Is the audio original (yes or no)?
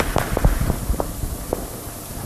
no